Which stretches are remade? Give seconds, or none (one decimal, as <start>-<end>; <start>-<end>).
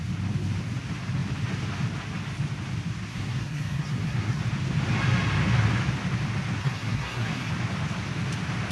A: 3.1-4.4; 6.6-7.5